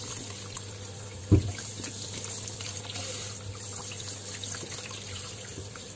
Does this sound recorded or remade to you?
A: recorded